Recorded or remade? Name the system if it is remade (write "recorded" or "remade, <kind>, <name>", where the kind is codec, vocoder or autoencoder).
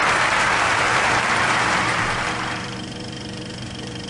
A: remade, vocoder, BigVGAN v2